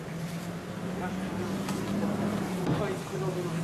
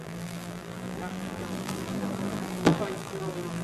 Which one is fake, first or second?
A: second